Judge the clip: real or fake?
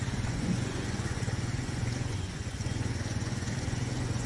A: fake